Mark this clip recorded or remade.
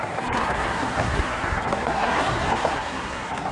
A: remade